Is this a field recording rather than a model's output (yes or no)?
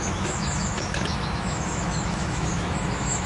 no